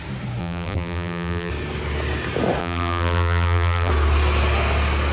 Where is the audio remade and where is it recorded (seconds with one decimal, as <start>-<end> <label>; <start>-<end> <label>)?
0.0-0.4 recorded; 0.4-1.5 remade; 1.5-2.6 recorded; 2.6-3.9 remade; 3.9-5.1 recorded